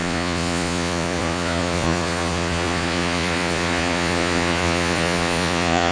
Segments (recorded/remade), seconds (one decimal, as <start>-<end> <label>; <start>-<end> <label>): 0.0-5.9 remade